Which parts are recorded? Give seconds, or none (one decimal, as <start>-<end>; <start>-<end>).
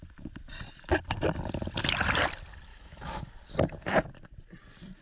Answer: 0.0-2.7; 3.3-5.0